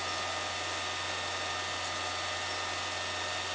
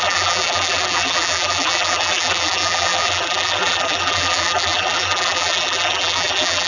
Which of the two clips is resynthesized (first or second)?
second